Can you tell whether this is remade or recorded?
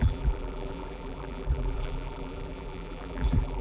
remade